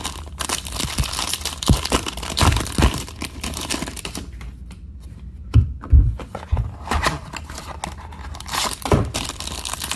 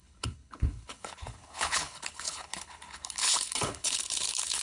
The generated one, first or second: second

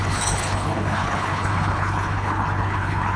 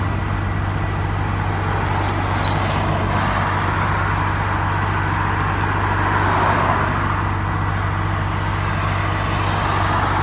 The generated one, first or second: first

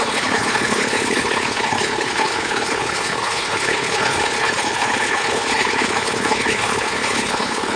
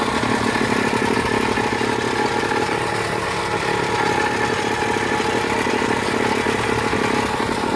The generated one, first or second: first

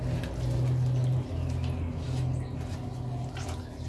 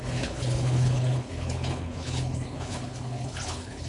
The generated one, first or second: second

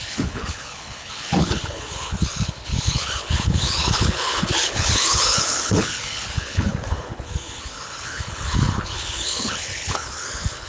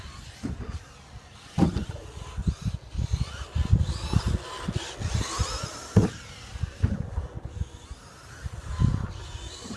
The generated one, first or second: first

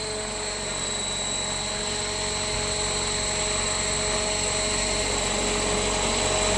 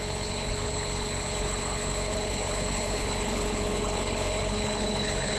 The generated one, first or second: second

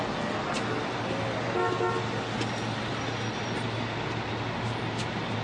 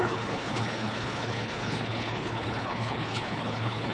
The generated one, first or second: second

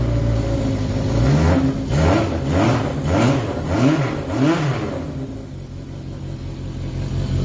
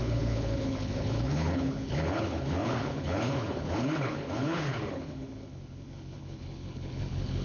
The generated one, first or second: second